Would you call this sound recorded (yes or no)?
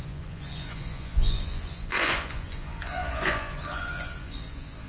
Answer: no